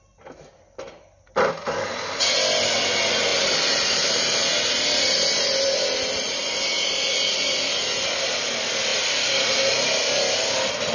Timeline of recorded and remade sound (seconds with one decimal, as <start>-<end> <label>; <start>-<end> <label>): 0.0-3.3 recorded; 3.3-8.1 remade; 8.1-10.9 recorded